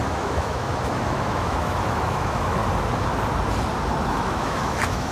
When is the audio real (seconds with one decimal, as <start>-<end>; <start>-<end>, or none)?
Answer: 2.6-4.1